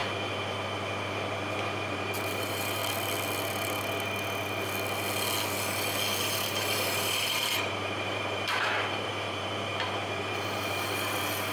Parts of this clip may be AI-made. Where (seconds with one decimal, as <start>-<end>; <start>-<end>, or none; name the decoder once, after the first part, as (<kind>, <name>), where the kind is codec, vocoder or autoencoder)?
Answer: 1.9-2.8 (vocoder, BigVGAN v2); 6.2-11.5

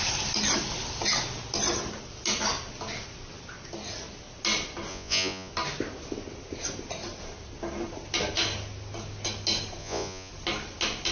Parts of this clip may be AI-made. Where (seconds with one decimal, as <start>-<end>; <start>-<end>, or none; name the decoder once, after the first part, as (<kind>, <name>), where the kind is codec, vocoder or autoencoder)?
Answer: 4.9-5.5 (vocoder, Vocos); 9.8-10.3